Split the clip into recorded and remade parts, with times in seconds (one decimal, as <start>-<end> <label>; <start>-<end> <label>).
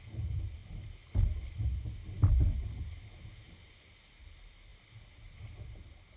0.0-6.2 recorded